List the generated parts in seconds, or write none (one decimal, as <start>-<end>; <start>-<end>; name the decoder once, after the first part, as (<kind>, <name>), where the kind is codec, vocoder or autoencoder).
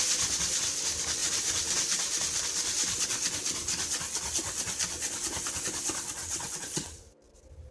6.2-7.0 (vocoder, WaveNeXt)